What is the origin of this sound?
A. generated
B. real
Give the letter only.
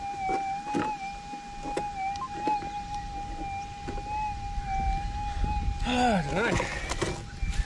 B